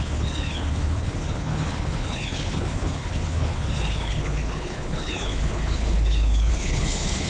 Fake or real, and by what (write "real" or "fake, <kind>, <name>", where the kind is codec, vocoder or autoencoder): fake, codec, HILCodec